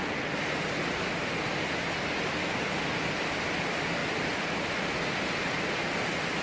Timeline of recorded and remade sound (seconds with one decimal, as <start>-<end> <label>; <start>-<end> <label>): 0.0-6.4 recorded